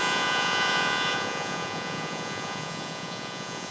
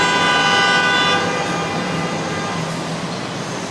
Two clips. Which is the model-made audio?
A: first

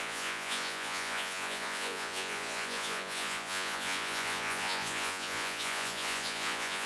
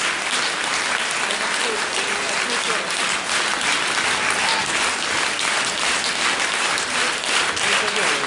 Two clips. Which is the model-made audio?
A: first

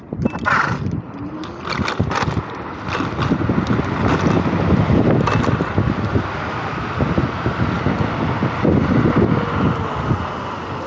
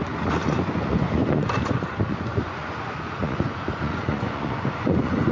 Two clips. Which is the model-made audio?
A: second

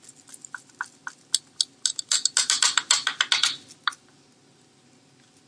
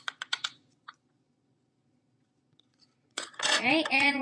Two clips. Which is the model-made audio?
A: second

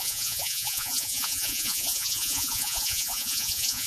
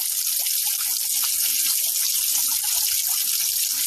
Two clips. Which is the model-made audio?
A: first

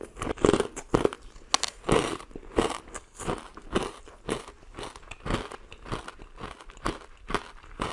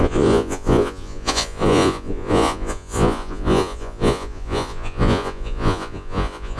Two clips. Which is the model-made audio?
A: second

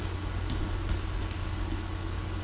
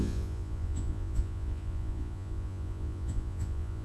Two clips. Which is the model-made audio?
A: second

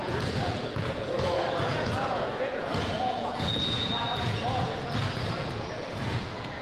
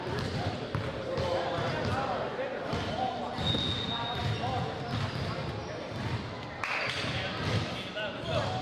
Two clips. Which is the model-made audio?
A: first